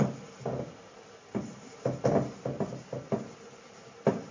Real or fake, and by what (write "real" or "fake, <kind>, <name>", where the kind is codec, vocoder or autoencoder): real